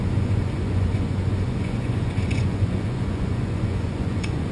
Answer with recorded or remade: remade